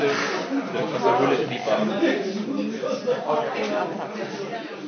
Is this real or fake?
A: real